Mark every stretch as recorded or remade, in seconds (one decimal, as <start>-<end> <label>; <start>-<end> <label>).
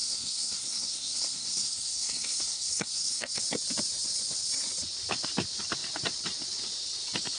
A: 0.0-3.4 remade; 3.4-7.4 recorded